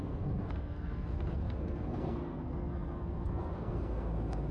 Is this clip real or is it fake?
fake